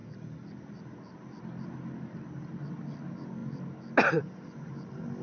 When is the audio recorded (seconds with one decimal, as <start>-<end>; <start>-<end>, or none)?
0.0-5.2